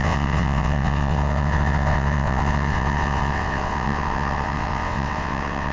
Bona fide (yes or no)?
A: no